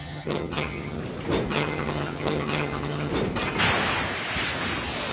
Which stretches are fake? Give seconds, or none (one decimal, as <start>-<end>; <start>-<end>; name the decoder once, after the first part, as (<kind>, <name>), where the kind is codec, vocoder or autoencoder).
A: 0.0-1.0 (vocoder, HiFi-GAN); 1.5-3.1